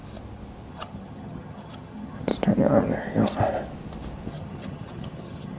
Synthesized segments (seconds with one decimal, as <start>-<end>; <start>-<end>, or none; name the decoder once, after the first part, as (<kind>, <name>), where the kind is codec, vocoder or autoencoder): 0.7-2.3 (vocoder, HiFi-GAN); 4.3-5.6